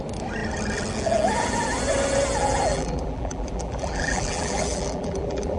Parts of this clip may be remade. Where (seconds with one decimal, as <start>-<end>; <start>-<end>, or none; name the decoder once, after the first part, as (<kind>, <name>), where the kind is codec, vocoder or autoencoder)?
2.7-5.6 (vocoder, BigVGAN v2)